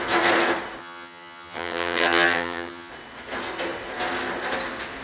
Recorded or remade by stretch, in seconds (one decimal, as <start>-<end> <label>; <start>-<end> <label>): 0.0-0.8 recorded; 0.8-2.9 remade; 2.9-5.0 recorded